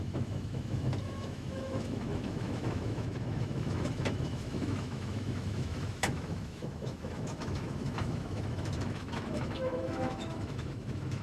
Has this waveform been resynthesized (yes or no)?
yes